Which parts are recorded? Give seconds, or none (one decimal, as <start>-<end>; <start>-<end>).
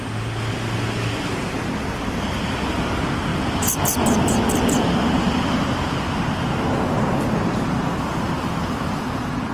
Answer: 0.0-9.5